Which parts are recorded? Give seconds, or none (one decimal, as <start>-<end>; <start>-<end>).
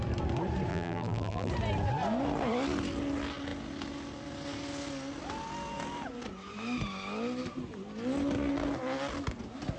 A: 0.0-0.7; 1.5-9.8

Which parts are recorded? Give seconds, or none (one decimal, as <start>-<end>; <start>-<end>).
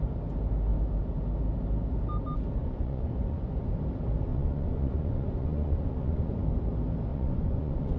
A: 0.0-2.6; 3.7-4.3; 6.4-7.1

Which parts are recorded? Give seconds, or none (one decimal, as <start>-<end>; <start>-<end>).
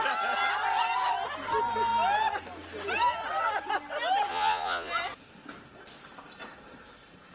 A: 0.0-4.3; 4.9-7.3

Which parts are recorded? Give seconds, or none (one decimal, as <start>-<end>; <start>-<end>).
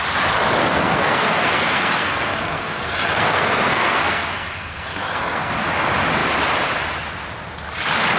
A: 0.0-0.6; 5.5-8.2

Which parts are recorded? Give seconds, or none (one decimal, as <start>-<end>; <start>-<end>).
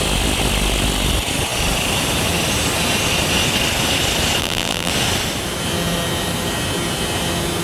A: 0.0-4.4; 4.9-7.6